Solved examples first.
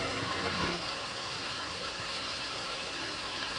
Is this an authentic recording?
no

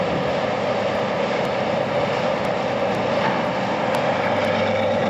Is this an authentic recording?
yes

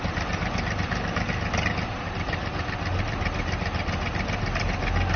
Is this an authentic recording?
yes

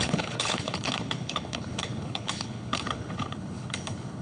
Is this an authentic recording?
no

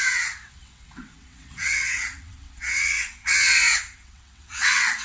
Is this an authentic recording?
no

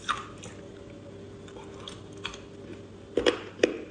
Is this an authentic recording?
yes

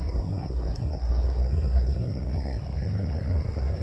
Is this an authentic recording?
no